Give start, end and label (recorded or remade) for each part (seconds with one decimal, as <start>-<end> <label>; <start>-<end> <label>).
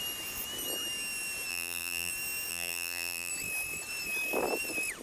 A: 0.0-1.5 recorded; 1.5-2.1 remade; 2.1-2.5 recorded; 2.5-3.3 remade; 3.3-5.0 recorded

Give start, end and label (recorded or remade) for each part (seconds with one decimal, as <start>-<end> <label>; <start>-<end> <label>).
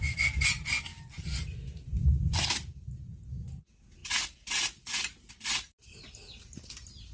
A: 0.0-7.1 recorded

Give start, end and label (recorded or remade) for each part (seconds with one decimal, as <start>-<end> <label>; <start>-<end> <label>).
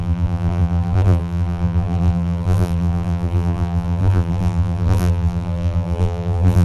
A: 0.0-6.6 remade